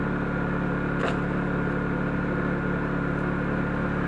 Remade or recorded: recorded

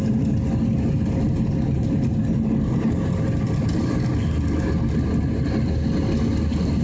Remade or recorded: recorded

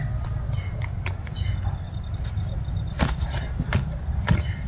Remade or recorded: recorded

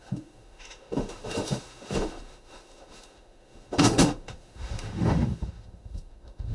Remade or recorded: remade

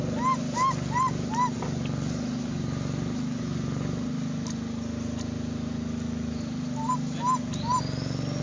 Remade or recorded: recorded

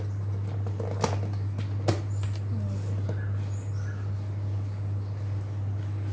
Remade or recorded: recorded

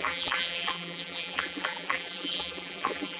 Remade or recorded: remade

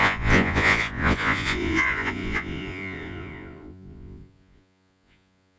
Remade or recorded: remade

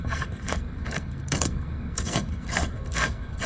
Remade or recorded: remade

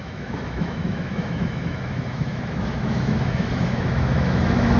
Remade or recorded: remade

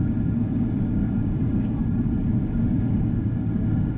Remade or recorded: remade